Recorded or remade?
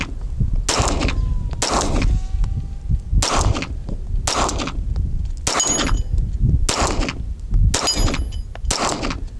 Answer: recorded